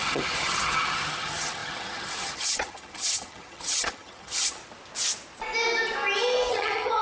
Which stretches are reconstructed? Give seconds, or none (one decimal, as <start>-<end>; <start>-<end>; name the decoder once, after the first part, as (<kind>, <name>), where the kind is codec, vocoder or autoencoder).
0.0-4.6 (vocoder, HiFi-GAN); 6.5-7.0

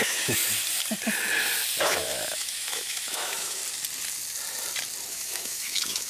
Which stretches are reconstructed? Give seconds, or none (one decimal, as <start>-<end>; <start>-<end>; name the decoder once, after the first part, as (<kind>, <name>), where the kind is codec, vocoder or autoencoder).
0.0-0.4 (autoencoder, DAC-VAE); 1.8-3.6; 5.1-6.1

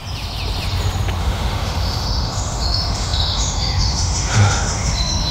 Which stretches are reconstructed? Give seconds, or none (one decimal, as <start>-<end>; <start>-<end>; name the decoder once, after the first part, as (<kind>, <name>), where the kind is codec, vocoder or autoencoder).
1.2-5.3 (autoencoder, DAC-VAE)

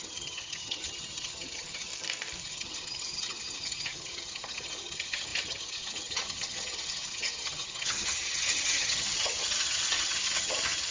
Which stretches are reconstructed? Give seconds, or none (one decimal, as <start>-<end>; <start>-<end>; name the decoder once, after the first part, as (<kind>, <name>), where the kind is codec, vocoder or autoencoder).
0.0-1.9 (vocoder, HiFi-GAN); 2.4-10.9

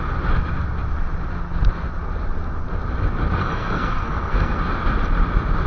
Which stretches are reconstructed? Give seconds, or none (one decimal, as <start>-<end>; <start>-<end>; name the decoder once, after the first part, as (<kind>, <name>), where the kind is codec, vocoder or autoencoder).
3.4-4.6 (codec, SNAC)

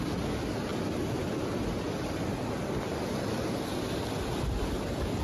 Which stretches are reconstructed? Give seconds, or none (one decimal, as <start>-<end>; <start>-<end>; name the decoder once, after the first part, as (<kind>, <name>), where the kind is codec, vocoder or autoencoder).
none